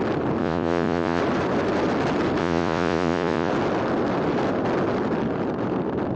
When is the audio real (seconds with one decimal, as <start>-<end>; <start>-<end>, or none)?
0.0-0.4; 1.2-2.4; 3.5-6.2